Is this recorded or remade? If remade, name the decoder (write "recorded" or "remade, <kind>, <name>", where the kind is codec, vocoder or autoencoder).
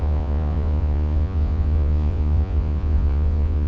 remade, vocoder, Vocos